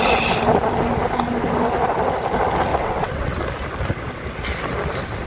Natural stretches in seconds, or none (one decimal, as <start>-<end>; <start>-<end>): 0.0-2.7; 3.4-5.3